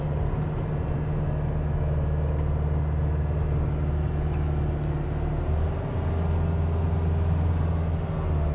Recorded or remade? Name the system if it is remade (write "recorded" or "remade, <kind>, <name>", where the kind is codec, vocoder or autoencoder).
recorded